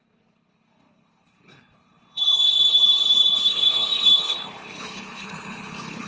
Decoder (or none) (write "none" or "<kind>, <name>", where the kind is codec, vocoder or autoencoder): codec, HILCodec